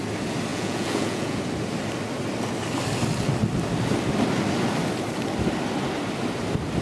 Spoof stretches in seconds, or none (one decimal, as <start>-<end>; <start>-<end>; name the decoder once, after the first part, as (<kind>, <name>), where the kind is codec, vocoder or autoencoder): 0.5-1.4 (vocoder, Vocos)